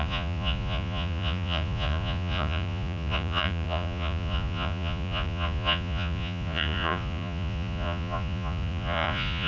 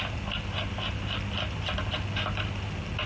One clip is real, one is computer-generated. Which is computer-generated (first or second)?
first